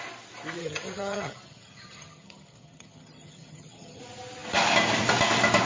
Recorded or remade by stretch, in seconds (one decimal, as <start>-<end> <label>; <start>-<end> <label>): 0.0-0.6 recorded; 0.6-4.0 remade; 4.0-5.7 recorded